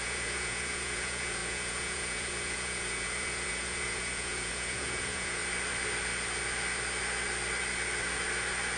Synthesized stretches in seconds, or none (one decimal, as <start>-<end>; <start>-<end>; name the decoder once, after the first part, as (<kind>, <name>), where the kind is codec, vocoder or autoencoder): 0.0-5.4 (vocoder, Vocos)